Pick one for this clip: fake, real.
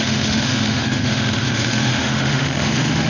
fake